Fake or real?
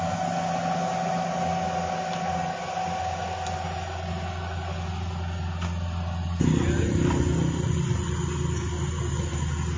real